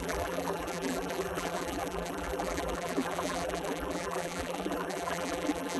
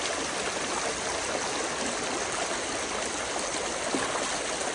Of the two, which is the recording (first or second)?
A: second